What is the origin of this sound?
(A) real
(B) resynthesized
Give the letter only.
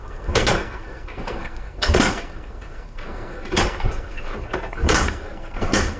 B